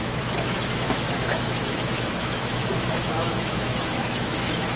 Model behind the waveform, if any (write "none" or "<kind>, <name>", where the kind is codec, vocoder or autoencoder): autoencoder, DAC-VAE